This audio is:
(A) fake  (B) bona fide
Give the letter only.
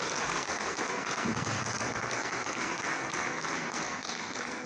A